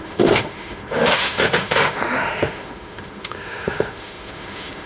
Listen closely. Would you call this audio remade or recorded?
remade